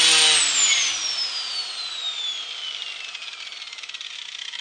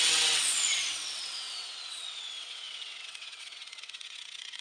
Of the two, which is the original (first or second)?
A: first